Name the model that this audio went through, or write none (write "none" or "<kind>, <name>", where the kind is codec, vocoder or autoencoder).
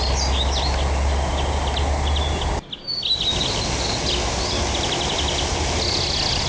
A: none